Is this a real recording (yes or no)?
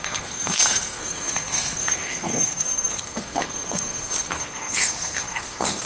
no